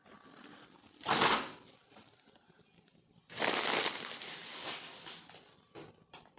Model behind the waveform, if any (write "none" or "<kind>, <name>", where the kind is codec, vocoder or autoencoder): none